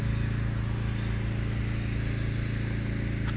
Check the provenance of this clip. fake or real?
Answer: real